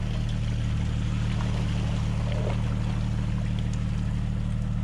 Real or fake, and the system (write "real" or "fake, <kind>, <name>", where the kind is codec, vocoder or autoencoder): real